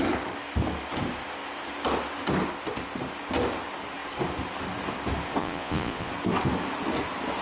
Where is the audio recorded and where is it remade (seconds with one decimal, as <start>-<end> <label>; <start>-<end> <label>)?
0.0-5.4 recorded; 5.4-6.1 remade; 6.1-7.4 recorded